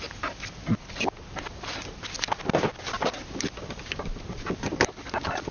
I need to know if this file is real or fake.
real